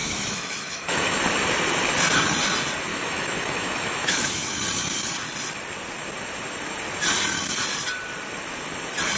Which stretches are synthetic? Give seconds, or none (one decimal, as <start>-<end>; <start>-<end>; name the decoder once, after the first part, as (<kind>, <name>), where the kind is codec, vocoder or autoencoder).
0.0-1.2 (autoencoder, DAC-VAE); 2.9-4.5